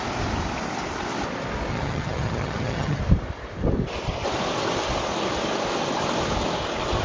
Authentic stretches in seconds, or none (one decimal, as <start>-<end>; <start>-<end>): 0.0-1.7; 3.0-7.0